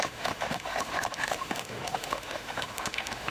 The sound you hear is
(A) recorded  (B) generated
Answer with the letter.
B